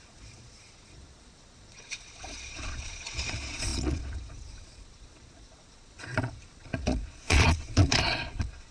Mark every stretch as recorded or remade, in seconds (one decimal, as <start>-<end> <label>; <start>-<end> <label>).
0.0-8.7 remade